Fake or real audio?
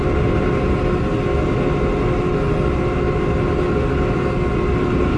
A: real